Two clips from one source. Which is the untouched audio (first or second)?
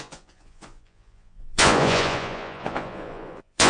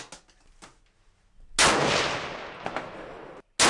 second